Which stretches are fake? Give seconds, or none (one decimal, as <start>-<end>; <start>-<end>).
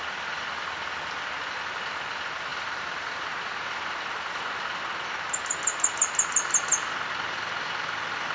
none